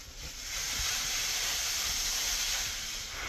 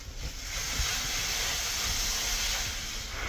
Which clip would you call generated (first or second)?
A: first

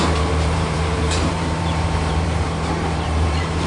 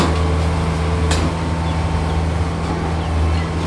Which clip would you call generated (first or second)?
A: first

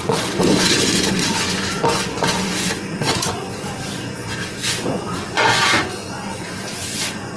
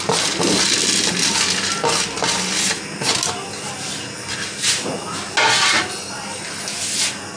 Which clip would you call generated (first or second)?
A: first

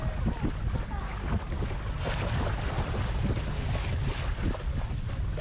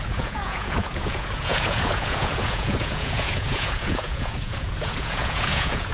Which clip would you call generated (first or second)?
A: second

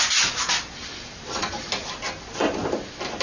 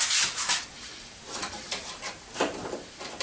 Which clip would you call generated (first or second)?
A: second